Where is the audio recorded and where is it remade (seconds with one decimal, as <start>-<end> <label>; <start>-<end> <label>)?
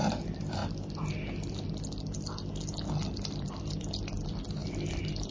0.0-0.6 remade; 0.6-3.1 recorded; 3.1-5.3 remade